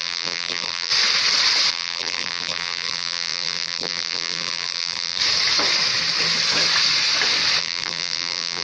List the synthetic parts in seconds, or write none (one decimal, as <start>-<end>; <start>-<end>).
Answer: 0.0-0.9; 1.7-5.2; 7.6-8.6